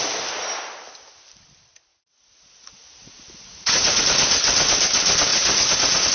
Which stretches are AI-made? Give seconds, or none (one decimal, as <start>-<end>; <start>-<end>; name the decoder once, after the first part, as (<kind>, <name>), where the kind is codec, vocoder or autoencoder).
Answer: 1.9-4.0 (vocoder, Vocos); 5.3-6.1